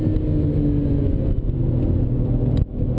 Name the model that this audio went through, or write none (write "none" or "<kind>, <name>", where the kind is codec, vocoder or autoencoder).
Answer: none